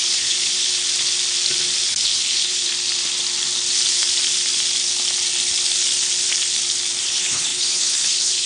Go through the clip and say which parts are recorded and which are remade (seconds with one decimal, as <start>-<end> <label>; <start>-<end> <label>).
0.0-0.7 remade; 0.7-1.8 recorded; 1.8-2.7 remade; 2.7-7.0 recorded; 7.0-8.5 remade